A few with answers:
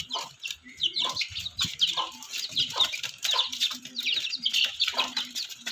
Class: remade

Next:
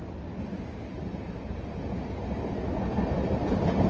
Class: recorded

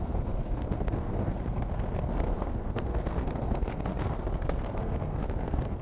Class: remade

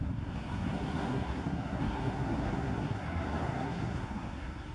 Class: remade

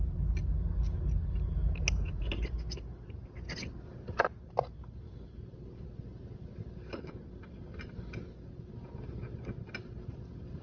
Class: recorded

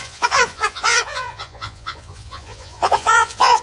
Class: remade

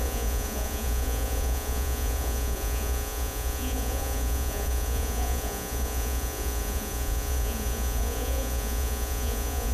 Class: remade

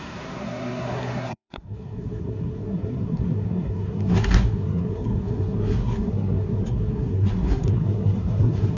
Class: remade